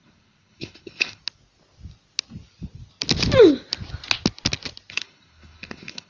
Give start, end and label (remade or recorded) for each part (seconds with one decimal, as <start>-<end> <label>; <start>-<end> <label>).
0.0-1.2 remade; 1.2-4.9 recorded; 4.9-6.1 remade